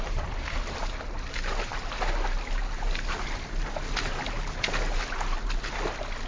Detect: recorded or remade recorded